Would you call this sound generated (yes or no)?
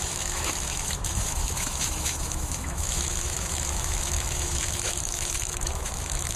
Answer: yes